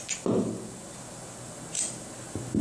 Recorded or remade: recorded